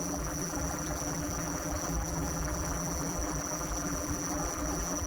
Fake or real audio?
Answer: fake